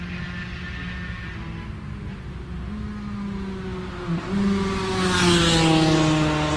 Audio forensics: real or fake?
real